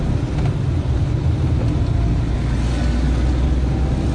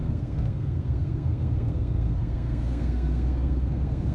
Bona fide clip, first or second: first